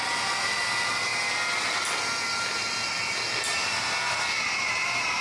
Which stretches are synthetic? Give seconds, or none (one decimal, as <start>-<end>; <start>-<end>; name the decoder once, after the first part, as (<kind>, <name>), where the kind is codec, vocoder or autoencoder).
none